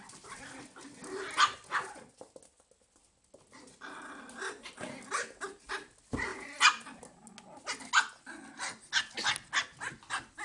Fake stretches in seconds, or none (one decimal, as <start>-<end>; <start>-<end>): none